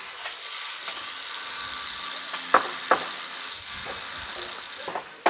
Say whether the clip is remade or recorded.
recorded